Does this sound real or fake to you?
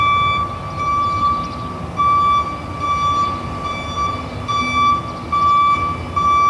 real